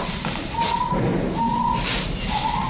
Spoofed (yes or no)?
no